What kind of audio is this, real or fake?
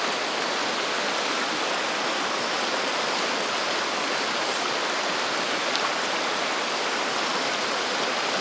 real